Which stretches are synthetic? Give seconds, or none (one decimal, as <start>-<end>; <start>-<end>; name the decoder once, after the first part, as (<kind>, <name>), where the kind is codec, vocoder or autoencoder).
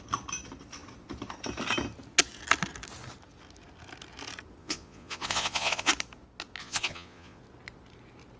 4.6-5.9 (vocoder, Vocos); 6.6-7.4